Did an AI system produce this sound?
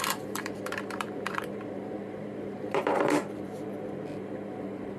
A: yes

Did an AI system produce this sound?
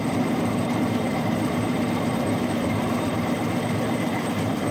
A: yes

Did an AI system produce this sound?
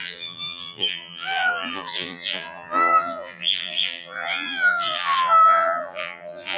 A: yes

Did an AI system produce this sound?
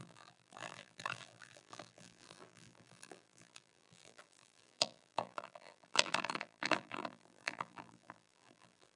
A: yes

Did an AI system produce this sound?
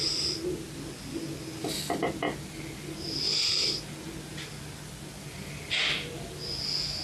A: no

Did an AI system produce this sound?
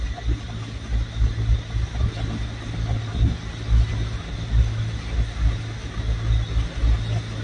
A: no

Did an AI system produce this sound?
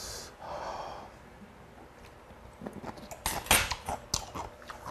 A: no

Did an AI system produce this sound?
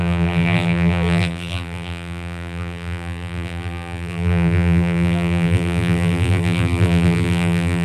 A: yes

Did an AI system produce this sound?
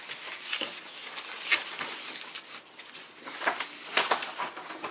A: no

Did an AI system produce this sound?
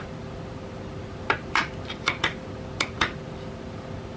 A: yes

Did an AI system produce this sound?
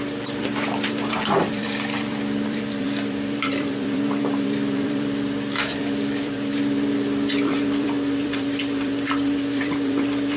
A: yes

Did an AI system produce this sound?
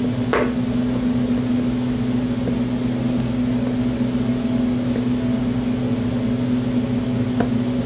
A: no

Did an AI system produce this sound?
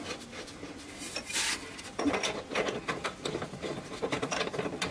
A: no